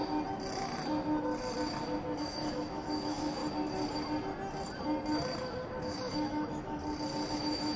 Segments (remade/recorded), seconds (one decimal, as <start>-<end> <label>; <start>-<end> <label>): 0.0-2.2 recorded; 2.2-3.4 remade; 3.4-5.8 recorded; 5.8-6.8 remade; 6.8-7.3 recorded; 7.3-7.8 remade